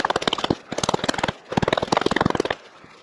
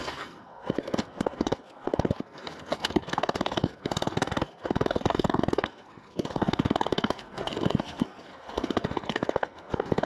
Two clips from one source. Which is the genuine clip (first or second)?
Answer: first